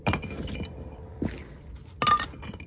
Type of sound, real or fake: real